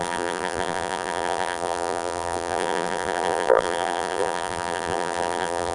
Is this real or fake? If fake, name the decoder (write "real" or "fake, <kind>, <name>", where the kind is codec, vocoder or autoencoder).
fake, vocoder, BigVGAN v2